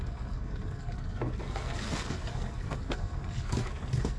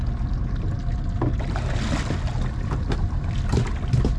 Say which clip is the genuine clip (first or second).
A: second